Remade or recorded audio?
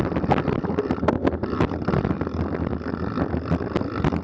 recorded